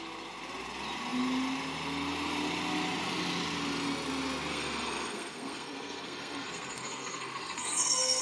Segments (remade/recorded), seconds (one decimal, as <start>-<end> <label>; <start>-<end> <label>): 0.0-4.5 recorded; 4.5-8.2 remade